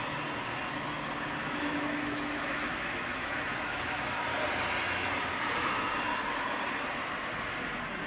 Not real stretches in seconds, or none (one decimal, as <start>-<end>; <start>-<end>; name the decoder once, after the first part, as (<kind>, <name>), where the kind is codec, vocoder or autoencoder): 1.4-4.2 (autoencoder, DAC-VAE)